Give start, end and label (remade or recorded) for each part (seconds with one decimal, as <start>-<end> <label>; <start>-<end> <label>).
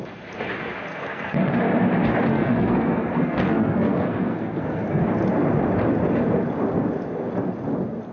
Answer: 0.0-0.9 recorded; 0.9-1.5 remade; 1.5-2.3 recorded; 2.3-5.0 remade; 5.0-8.1 recorded